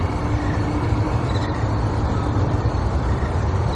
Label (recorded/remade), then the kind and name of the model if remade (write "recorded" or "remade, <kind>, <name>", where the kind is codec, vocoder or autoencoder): remade, vocoder, BigVGAN v2